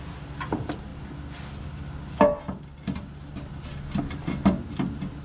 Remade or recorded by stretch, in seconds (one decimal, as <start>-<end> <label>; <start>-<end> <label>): 0.0-5.2 recorded